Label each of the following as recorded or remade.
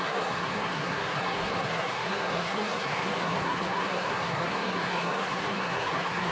remade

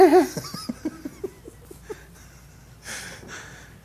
recorded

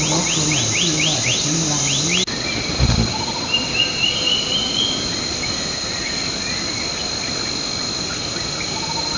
recorded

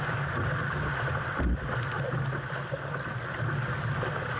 recorded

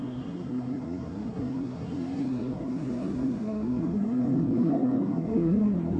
remade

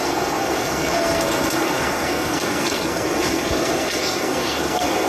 remade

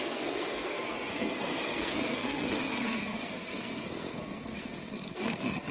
remade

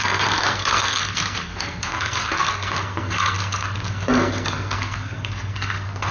remade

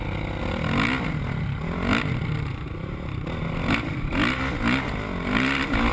recorded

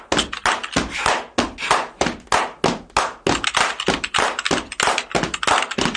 recorded